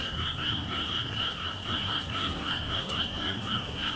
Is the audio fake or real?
fake